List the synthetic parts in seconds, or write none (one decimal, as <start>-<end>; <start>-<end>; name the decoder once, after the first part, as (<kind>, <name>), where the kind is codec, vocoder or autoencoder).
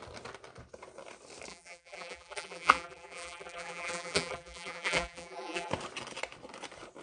1.5-5.7 (vocoder, BigVGAN v2)